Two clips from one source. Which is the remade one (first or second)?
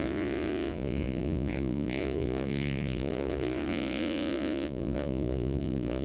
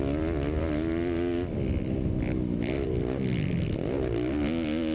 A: first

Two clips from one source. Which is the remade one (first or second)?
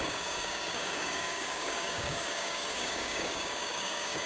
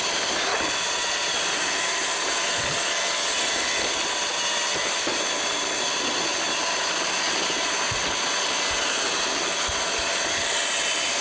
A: first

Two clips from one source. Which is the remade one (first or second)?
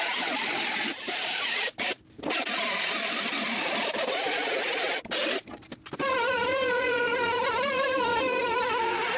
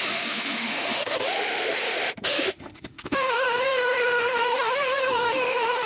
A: second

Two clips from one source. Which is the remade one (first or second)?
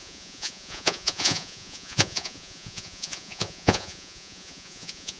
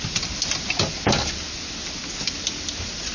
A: first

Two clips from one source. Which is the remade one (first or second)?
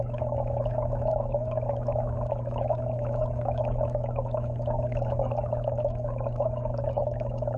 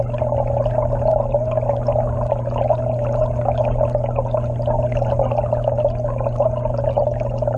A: first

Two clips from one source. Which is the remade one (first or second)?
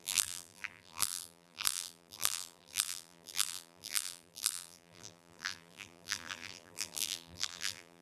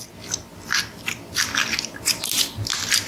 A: first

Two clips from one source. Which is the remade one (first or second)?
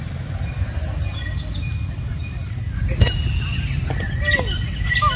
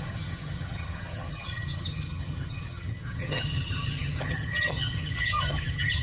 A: second